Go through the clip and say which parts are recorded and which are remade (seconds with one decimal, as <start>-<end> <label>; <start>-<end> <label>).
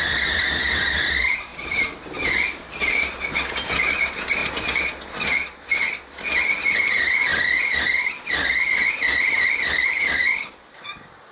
0.0-1.5 recorded; 1.5-3.1 remade; 3.1-11.3 recorded